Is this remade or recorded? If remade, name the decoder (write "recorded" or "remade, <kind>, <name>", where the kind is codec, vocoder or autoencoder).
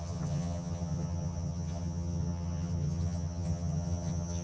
remade, vocoder, HiFi-GAN